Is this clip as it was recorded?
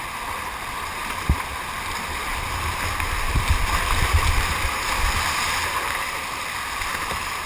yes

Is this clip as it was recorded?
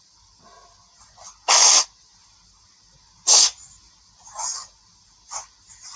yes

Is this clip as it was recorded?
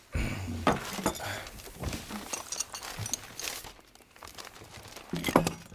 yes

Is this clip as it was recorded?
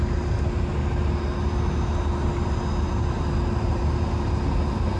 yes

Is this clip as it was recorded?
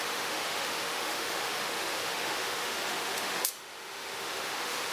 no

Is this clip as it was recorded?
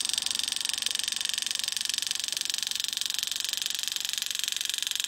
no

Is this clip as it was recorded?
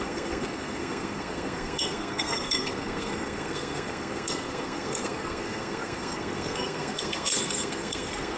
no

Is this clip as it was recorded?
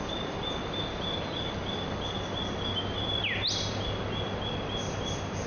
yes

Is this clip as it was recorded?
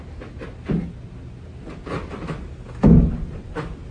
yes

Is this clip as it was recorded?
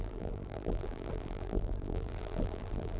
no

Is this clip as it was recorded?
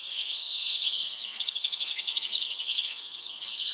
no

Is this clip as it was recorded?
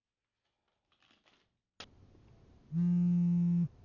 yes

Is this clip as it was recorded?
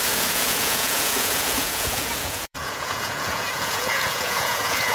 no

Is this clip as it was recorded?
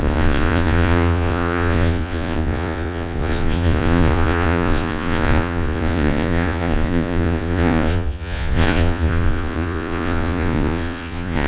no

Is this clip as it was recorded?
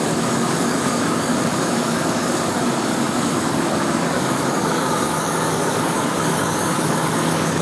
no